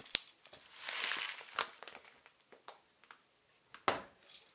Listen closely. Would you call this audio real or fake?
real